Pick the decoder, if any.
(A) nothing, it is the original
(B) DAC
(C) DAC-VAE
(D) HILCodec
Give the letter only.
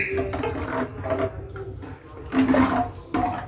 A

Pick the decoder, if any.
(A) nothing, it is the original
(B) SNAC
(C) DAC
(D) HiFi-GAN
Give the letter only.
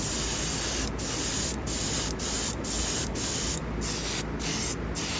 A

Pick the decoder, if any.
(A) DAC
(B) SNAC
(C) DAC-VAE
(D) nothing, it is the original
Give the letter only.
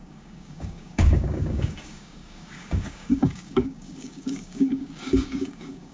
A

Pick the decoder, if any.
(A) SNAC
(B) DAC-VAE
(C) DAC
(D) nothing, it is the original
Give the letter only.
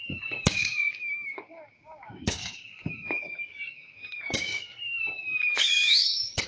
C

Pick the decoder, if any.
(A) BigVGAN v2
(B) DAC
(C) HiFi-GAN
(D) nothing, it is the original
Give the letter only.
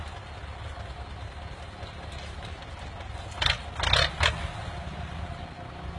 D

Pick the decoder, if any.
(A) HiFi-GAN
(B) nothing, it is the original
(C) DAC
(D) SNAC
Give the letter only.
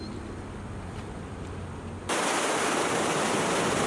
B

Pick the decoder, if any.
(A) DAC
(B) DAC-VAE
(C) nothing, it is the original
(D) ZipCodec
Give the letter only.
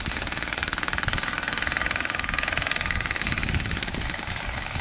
A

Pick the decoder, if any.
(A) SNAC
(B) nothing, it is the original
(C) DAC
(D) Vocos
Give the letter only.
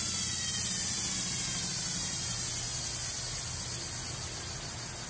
B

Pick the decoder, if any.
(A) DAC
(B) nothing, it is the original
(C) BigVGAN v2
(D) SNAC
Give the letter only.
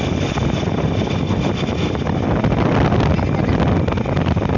B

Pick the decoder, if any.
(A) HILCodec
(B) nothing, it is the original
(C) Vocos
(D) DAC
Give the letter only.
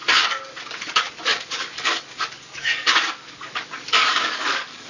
D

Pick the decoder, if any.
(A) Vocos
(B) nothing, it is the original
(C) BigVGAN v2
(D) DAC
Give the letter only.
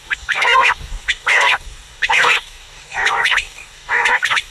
D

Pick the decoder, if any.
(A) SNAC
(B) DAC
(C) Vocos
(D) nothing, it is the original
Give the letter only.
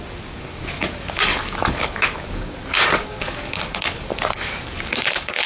B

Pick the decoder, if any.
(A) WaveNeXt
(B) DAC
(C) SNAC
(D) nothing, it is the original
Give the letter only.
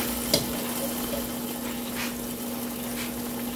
D